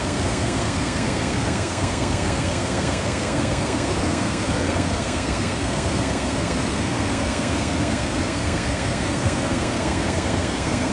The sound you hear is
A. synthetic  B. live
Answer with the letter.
A